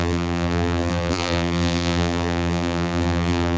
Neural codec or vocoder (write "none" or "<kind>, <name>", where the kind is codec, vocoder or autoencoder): vocoder, BigVGAN v2